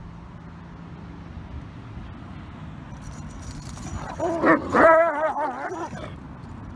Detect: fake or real real